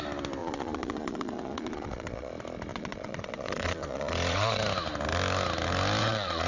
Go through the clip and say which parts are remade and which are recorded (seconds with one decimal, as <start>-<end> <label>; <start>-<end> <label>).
0.0-0.4 recorded; 0.4-2.3 remade; 2.3-2.7 recorded; 2.7-4.6 remade; 4.6-6.0 recorded; 6.0-6.5 remade